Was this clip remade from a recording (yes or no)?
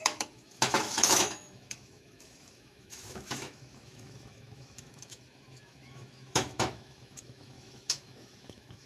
yes